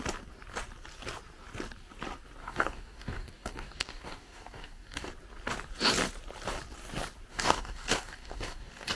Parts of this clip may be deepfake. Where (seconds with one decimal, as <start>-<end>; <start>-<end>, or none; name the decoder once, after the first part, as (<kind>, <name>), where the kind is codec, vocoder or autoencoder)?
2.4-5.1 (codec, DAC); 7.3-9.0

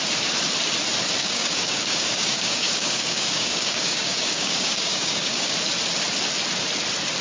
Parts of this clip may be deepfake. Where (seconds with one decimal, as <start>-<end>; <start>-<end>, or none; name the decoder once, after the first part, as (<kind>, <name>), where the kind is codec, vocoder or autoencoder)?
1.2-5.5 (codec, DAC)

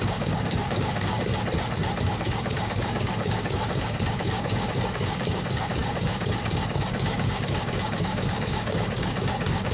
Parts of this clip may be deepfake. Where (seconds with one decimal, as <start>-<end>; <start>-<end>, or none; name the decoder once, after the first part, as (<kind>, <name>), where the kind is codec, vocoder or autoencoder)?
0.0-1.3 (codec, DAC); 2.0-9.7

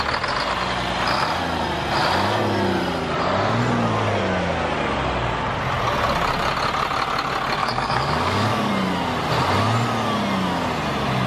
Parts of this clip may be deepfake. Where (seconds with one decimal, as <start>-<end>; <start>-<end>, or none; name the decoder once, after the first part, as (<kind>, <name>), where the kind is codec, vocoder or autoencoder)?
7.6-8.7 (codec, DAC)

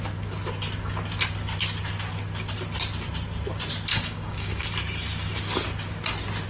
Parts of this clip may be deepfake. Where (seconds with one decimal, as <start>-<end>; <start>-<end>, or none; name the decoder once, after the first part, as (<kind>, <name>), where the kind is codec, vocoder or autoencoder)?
3.9-4.6 (codec, DAC)

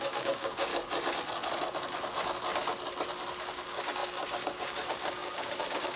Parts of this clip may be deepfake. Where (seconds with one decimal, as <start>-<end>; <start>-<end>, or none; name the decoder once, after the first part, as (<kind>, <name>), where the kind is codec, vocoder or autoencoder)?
0.0-0.7 (codec, DAC); 3.4-6.0